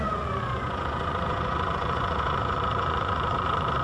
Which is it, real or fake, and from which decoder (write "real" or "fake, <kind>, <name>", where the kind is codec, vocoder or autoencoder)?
fake, vocoder, Vocos